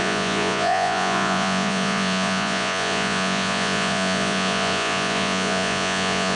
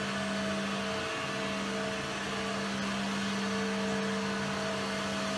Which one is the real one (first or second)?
second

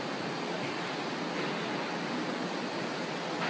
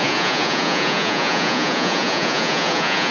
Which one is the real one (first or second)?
first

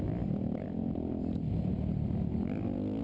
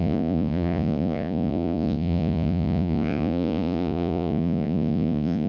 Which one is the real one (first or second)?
first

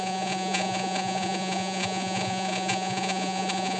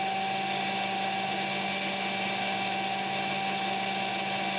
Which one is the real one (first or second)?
second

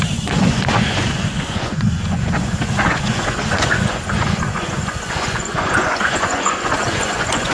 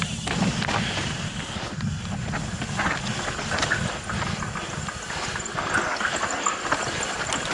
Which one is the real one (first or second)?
second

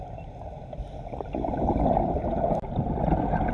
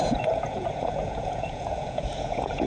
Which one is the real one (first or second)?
first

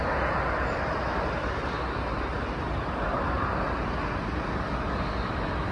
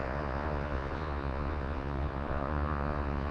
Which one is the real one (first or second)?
first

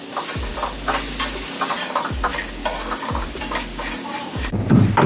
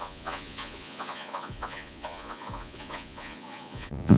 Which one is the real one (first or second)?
first